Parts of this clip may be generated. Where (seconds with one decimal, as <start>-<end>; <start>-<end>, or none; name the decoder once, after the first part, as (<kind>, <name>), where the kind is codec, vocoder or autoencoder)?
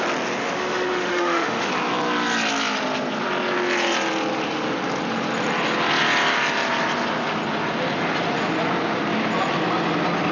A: 0.4-1.7 (autoencoder, DAC-VAE)